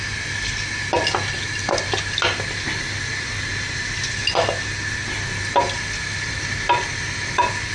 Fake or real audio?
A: real